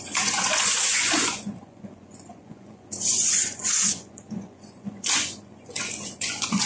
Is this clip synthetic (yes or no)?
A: yes